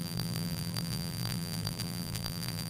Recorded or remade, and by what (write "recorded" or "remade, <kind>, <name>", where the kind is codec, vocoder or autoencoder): remade, vocoder, BigVGAN v2